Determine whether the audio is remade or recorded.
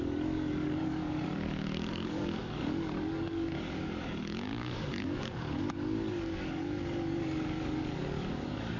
remade